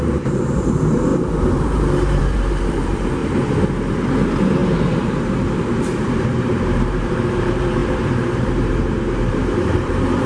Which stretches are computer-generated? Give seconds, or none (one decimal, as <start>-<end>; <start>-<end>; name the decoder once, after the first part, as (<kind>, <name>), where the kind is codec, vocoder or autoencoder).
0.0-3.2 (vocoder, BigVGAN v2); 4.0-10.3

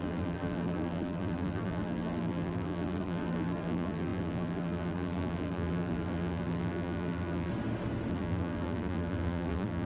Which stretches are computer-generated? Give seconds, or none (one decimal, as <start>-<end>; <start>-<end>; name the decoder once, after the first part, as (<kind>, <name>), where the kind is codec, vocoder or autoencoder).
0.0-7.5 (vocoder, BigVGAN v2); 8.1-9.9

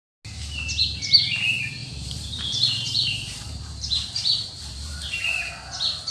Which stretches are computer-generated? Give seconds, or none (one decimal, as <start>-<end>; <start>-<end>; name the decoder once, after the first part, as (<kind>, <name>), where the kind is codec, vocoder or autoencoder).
1.8-5.5 (vocoder, BigVGAN v2)